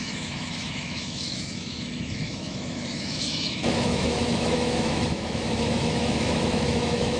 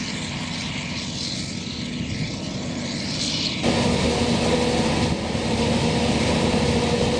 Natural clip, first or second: second